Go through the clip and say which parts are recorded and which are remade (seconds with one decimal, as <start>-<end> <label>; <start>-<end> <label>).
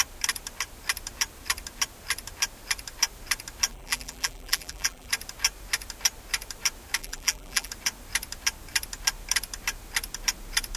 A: 0.0-3.7 recorded; 3.7-5.1 remade; 5.1-7.0 recorded; 7.0-7.7 remade; 7.7-10.8 recorded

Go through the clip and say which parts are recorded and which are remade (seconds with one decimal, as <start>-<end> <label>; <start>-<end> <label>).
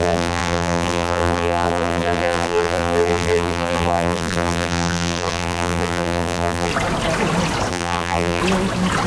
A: 0.0-6.7 remade; 6.7-7.7 recorded; 7.7-8.4 remade; 8.4-9.1 recorded